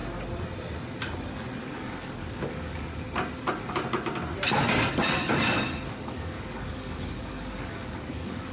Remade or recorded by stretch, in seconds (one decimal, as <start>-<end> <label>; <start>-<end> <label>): 0.0-1.6 recorded; 1.6-2.9 remade; 2.9-5.9 recorded; 5.9-8.5 remade